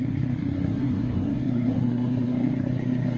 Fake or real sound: fake